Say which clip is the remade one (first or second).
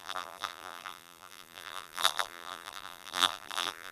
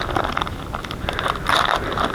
first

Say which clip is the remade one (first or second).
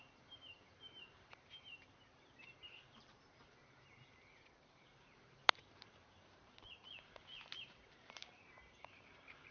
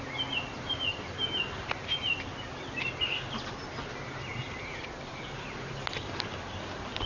first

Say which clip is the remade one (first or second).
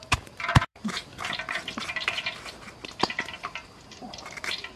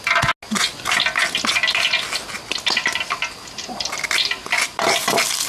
first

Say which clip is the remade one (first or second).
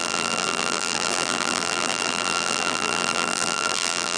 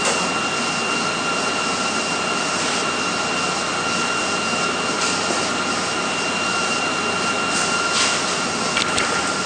first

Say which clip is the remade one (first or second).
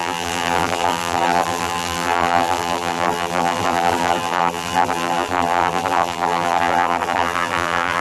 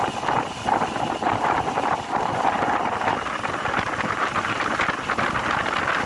first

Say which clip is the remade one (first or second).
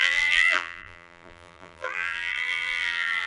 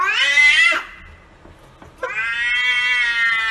first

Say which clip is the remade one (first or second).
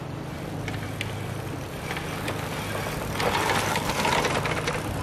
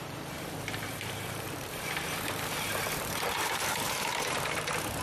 second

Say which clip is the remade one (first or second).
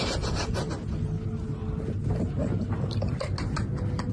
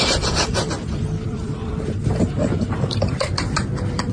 second